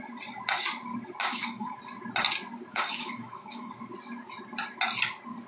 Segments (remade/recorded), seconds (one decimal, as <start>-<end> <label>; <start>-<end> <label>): 0.0-1.2 recorded; 1.2-1.8 remade; 1.8-2.7 recorded; 2.7-3.7 remade; 3.7-5.5 recorded